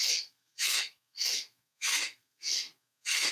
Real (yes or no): no